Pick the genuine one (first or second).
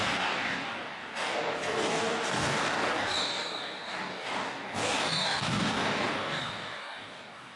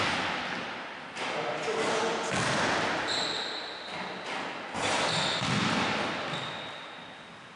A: second